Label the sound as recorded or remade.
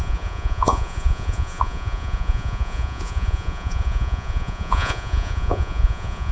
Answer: remade